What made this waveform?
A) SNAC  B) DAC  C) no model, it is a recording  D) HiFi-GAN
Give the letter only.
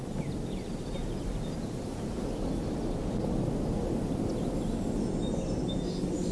C